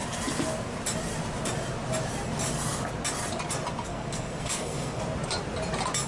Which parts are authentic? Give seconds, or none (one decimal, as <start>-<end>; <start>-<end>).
0.0-3.9; 5.0-6.1